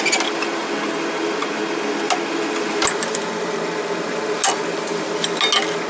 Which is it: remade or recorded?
recorded